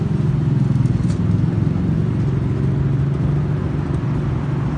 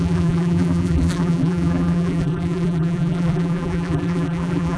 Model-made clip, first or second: second